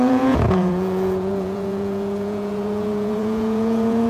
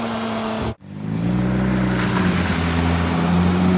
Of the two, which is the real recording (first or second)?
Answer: second